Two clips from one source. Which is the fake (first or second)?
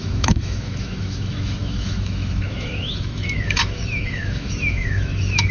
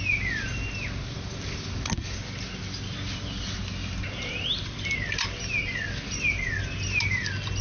first